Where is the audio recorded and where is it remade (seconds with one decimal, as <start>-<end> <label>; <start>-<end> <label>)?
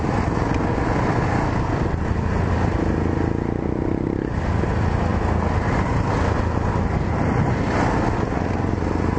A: 0.0-9.2 recorded